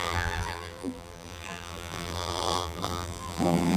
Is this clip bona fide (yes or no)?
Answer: no